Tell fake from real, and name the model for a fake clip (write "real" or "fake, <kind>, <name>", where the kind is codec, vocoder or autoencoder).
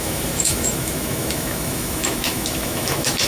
fake, autoencoder, DAC-VAE